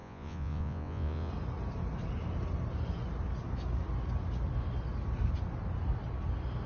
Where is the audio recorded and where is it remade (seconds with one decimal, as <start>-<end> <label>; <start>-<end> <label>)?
0.0-1.3 remade; 1.3-6.7 recorded